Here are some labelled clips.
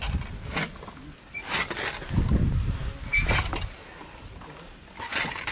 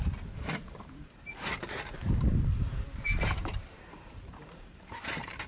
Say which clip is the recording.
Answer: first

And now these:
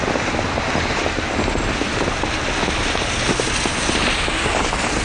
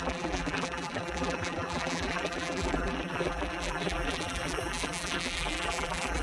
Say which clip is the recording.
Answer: first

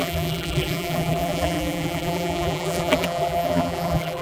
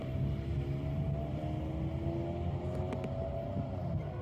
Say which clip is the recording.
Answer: second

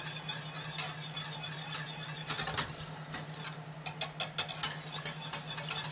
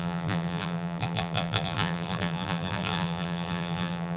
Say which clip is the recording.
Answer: first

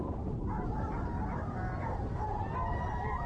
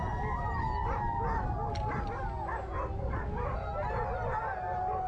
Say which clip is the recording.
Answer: second